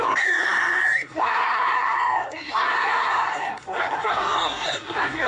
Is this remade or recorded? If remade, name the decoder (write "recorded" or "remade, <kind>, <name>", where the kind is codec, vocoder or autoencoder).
remade, codec, SNAC